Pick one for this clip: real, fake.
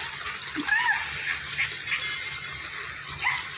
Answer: real